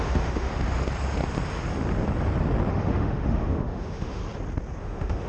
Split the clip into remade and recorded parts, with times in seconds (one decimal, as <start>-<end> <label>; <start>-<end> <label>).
0.0-0.5 remade; 0.5-2.7 recorded; 2.7-4.2 remade; 4.2-4.8 recorded; 4.8-5.3 remade